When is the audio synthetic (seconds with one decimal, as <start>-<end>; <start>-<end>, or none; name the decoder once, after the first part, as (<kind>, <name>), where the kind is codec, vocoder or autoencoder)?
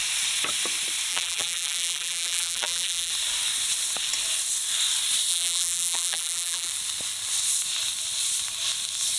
1.1-3.1 (vocoder, BigVGAN v2); 5.3-6.7